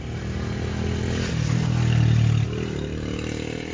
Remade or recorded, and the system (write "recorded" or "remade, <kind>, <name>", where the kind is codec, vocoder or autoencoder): recorded